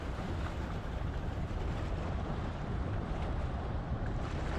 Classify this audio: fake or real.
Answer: fake